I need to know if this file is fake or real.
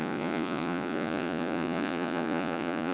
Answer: fake